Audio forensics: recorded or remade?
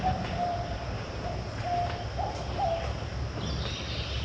recorded